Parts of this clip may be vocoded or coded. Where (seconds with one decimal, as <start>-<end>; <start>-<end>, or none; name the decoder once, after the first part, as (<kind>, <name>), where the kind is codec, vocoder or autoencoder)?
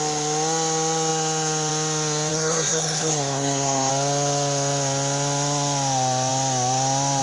2.3-3.9 (codec, SNAC)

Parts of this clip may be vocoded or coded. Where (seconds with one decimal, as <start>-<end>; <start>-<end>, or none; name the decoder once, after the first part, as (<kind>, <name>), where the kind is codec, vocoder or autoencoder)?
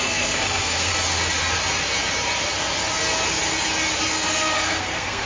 0.0-0.9 (codec, SNAC); 4.1-5.3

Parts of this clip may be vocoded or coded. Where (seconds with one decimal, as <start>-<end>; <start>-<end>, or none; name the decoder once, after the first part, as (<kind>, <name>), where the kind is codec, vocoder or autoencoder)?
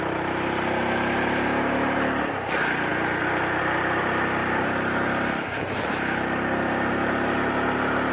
4.4-5.3 (vocoder, BigVGAN v2)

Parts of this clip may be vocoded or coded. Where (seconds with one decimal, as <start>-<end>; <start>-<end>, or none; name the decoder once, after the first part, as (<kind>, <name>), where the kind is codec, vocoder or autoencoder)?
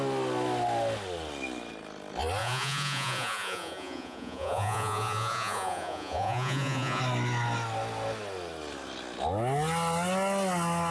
2.4-7.0 (vocoder, Vocos)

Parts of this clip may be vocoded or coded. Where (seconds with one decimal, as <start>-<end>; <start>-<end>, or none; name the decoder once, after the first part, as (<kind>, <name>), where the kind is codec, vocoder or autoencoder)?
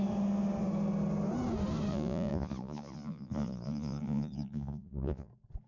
1.9-5.3 (vocoder, Vocos)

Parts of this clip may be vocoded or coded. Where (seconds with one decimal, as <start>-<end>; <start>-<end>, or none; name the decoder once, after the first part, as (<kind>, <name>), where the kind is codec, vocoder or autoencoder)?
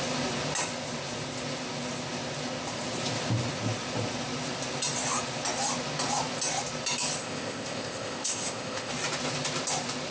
7.2-8.9 (codec, ZipCodec)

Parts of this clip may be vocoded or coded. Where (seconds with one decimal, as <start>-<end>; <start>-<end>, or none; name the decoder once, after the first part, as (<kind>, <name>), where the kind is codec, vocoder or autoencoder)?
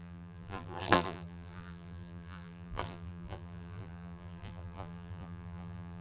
0.0-6.0 (vocoder, BigVGAN v2)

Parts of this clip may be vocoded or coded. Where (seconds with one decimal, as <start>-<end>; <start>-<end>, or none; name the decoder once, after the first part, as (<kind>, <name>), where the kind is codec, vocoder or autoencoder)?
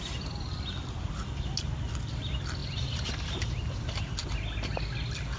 2.6-4.3 (vocoder, BigVGAN v2)